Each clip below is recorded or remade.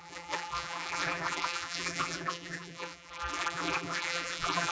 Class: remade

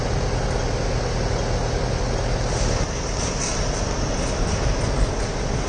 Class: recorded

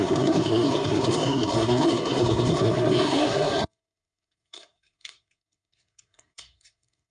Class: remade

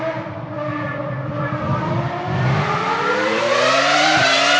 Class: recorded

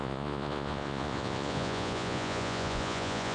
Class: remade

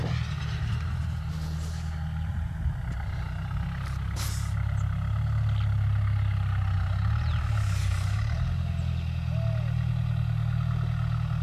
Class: recorded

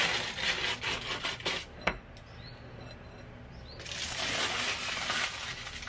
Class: recorded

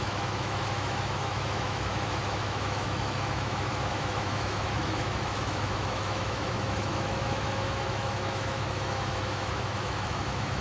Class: remade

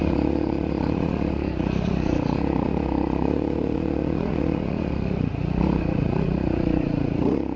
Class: remade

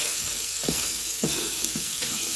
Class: remade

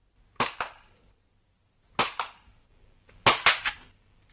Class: recorded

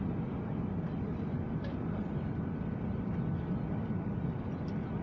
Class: recorded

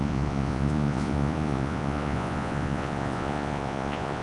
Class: remade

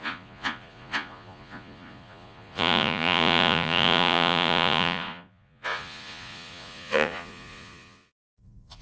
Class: remade